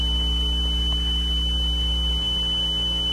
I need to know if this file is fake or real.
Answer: real